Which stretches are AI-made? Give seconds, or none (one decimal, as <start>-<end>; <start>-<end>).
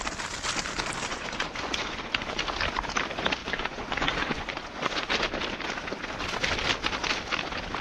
1.1-2.4; 3.4-5.1